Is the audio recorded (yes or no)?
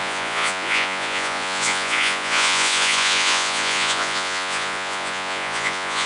no